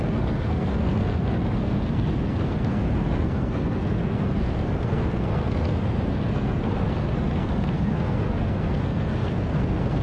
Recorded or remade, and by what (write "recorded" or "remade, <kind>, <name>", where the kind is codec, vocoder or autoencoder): remade, codec, SNAC